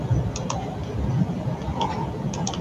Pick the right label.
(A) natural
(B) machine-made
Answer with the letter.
A